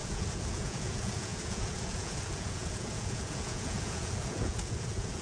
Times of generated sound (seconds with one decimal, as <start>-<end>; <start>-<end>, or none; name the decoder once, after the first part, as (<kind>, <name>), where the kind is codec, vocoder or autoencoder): 0.0-5.2 (vocoder, Vocos)